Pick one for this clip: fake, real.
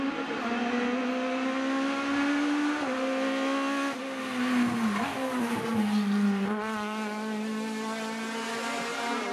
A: real